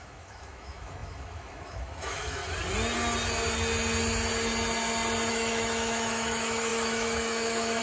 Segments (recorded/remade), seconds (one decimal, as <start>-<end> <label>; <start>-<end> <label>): 0.0-2.4 remade; 2.4-5.3 recorded; 5.3-7.8 remade